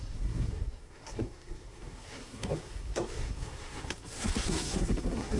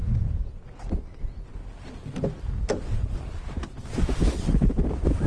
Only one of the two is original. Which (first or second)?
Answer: second